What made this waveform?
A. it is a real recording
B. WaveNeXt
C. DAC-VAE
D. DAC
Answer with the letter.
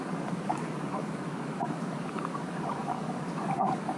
D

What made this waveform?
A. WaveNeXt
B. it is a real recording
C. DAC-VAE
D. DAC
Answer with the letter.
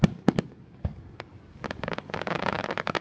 D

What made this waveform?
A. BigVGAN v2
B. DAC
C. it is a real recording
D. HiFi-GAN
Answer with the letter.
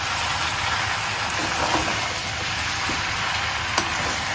C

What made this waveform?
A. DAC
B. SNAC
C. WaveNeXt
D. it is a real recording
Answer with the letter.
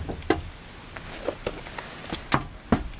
D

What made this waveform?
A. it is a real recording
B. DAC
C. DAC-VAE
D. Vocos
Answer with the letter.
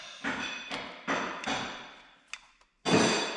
A